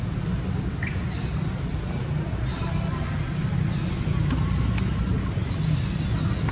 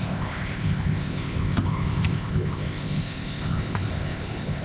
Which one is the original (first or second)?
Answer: first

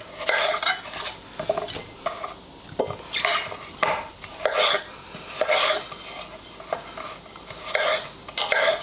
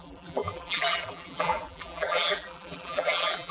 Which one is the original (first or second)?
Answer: first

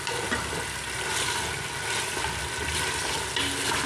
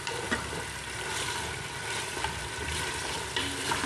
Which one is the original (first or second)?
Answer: first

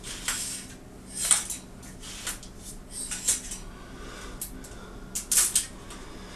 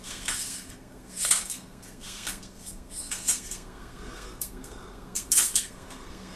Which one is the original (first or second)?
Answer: first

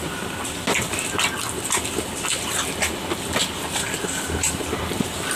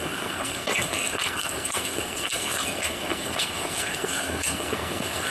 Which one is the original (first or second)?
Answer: first